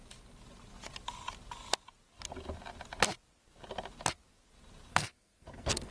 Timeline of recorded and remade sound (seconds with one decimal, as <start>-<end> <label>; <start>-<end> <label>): 0.0-4.9 recorded; 4.9-5.9 remade